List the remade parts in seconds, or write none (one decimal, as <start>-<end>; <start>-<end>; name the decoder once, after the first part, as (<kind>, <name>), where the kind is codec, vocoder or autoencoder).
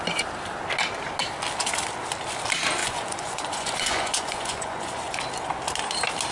2.8-5.2 (vocoder, Vocos)